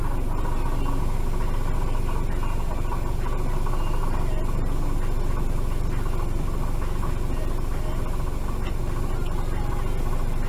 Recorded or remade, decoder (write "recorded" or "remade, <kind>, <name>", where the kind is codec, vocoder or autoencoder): recorded